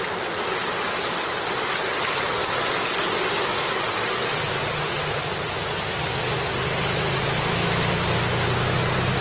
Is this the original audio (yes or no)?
yes